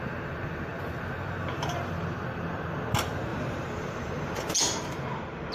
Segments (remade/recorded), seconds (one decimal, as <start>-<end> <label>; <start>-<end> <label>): 0.0-3.3 recorded; 3.3-4.4 remade; 4.4-5.5 recorded